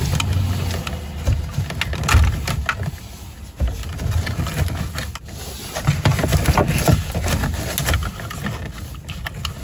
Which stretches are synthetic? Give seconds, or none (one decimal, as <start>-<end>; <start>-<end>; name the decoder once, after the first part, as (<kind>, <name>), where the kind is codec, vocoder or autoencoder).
none